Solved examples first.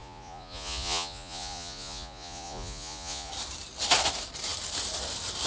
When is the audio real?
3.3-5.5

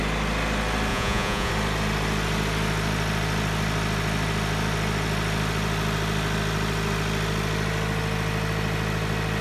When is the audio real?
0.0-0.9; 1.5-9.4

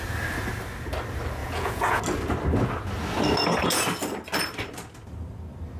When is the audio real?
0.0-1.4; 2.0-5.8

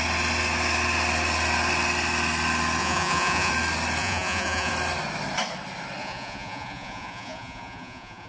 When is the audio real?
0.0-2.8; 3.5-4.0; 4.7-6.0

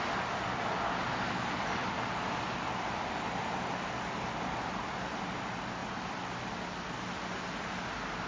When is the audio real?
0.0-8.3